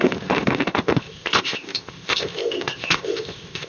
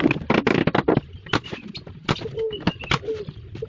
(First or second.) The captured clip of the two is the second